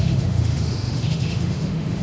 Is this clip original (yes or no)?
no